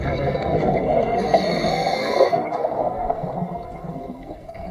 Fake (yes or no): yes